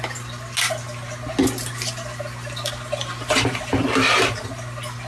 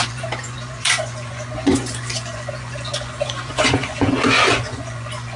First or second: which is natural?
first